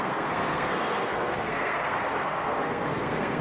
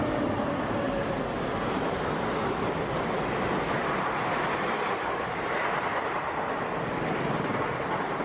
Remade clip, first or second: first